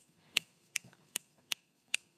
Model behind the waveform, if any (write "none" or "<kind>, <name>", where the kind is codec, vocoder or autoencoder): codec, SNAC